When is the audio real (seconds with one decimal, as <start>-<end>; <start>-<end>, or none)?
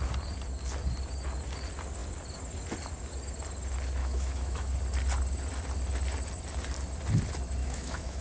0.0-4.0; 4.7-7.6